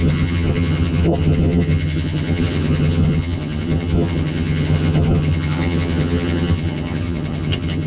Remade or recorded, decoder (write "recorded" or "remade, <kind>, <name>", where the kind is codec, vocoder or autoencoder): remade, vocoder, HiFi-GAN